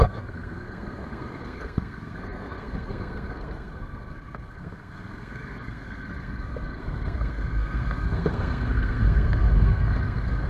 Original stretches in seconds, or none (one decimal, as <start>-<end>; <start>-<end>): none